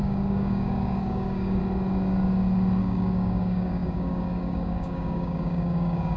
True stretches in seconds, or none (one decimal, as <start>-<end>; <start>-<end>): 1.6-2.8